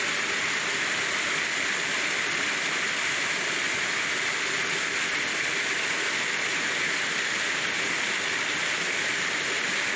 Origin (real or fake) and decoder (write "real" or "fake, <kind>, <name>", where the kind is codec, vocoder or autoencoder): real